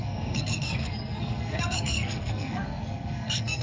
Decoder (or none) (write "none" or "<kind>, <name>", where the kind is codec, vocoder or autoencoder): codec, SNAC